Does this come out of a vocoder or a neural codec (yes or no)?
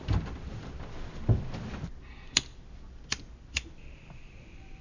no